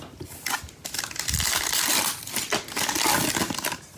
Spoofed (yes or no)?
no